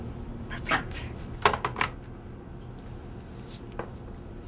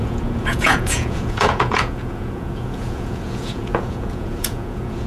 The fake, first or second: second